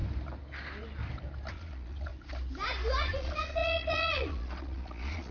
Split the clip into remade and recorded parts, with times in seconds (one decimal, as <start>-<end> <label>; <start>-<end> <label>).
0.0-1.5 recorded; 1.5-2.1 remade; 2.1-3.0 recorded; 3.0-5.3 remade